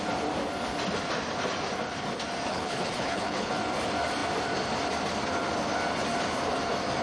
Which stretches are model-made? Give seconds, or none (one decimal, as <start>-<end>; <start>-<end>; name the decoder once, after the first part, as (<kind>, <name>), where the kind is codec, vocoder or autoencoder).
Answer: 2.5-3.5 (codec, HILCodec)